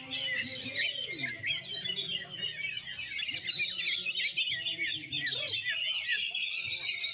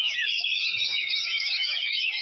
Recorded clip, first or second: first